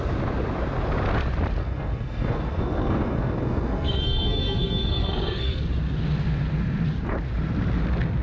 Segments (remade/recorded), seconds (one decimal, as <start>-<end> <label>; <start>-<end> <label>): 0.0-1.6 recorded; 1.6-5.6 remade; 5.6-8.2 recorded